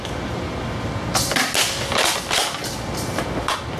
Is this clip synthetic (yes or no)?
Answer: no